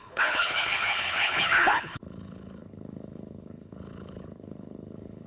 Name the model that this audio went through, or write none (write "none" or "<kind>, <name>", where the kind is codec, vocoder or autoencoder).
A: codec, HILCodec